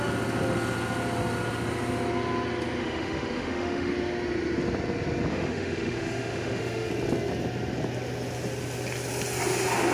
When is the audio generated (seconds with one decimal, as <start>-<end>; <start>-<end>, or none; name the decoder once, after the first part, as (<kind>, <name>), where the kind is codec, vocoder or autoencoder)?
2.8-3.9 (autoencoder, DAC-VAE); 5.3-6.9